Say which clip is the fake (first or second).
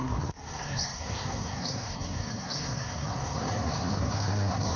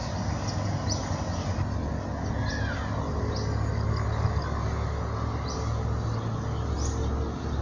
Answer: first